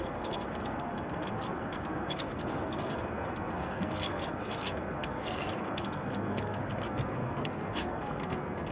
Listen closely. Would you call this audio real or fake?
fake